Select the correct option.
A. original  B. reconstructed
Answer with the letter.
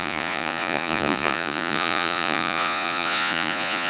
B